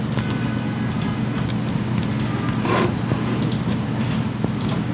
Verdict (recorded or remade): recorded